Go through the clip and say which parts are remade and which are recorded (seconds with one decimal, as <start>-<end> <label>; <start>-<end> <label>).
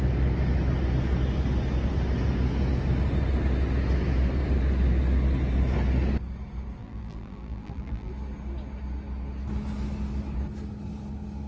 0.0-6.8 recorded; 6.8-8.1 remade; 8.1-11.5 recorded